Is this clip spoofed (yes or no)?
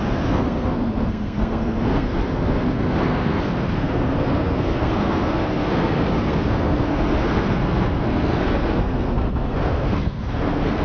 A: yes